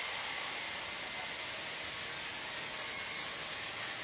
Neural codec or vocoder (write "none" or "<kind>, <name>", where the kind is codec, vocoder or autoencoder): none